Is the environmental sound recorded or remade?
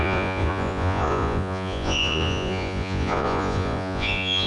remade